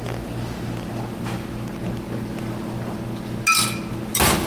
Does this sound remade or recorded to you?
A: recorded